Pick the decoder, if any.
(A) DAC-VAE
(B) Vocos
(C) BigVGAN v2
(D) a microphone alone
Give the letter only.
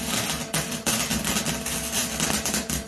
D